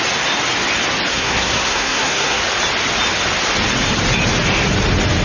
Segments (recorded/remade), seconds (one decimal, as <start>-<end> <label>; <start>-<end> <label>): 0.0-1.1 recorded; 1.1-2.4 remade; 2.4-5.2 recorded